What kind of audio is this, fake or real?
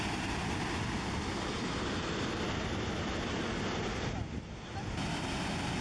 real